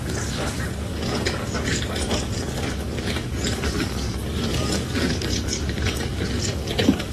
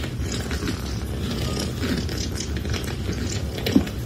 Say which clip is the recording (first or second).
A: second